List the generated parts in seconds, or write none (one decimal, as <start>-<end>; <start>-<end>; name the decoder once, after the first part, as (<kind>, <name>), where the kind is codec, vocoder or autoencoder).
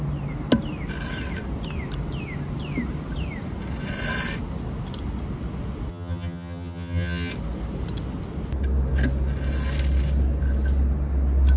5.9-7.3 (vocoder, HiFi-GAN)